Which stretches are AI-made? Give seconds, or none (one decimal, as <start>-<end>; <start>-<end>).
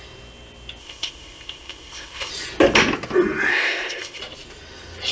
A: 0.8-2.3; 3.5-4.2